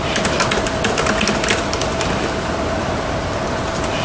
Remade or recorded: recorded